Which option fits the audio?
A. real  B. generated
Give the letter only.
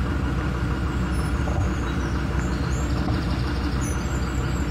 A